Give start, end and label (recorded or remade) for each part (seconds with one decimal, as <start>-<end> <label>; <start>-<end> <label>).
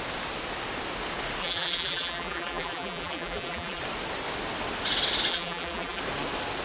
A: 0.0-1.4 recorded; 1.4-3.8 remade; 3.8-5.3 recorded; 5.3-6.0 remade; 6.0-6.6 recorded